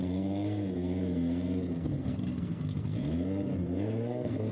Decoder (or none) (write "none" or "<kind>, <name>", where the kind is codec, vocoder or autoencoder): codec, SNAC